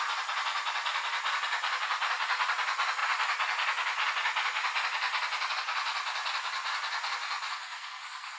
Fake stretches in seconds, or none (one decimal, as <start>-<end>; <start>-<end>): 7.5-8.4